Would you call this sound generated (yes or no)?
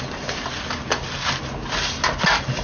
no